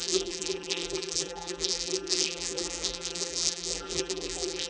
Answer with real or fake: fake